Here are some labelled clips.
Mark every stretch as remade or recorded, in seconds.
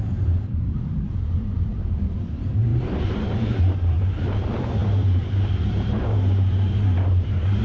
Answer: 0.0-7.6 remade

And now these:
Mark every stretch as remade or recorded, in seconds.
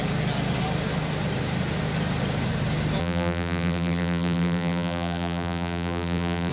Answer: 0.0-3.0 recorded; 3.0-6.5 remade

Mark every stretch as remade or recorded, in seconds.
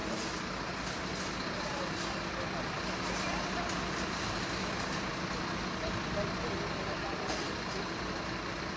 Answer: 0.0-3.8 recorded; 3.8-5.1 remade; 5.1-7.0 recorded; 7.0-8.8 remade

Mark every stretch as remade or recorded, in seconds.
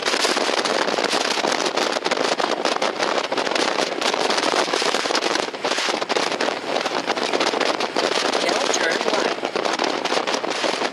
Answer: 0.0-3.5 recorded; 3.5-10.9 remade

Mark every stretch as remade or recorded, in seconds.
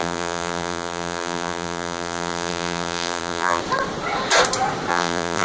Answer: 0.0-3.6 remade; 3.6-4.9 recorded; 4.9-5.4 remade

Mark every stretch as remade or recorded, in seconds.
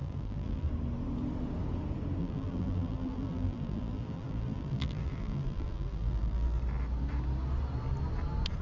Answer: 0.0-0.7 remade; 0.7-2.2 recorded; 2.2-6.6 remade; 6.6-8.6 recorded